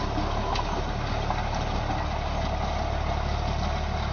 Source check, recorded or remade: recorded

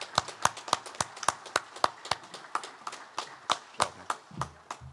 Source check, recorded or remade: recorded